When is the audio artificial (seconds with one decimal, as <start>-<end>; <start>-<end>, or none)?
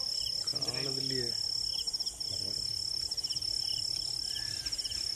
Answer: 0.0-0.5; 2.9-5.2